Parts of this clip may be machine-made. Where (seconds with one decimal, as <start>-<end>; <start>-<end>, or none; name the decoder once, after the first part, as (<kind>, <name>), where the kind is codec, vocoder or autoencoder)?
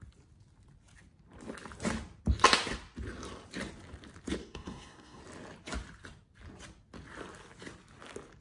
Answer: 4.4-5.2 (codec, SNAC)